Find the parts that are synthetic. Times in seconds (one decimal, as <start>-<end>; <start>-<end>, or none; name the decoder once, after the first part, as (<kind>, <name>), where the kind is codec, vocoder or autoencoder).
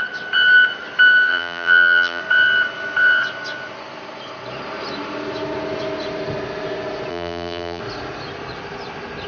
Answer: 1.3-2.2 (vocoder, BigVGAN v2); 7.1-7.8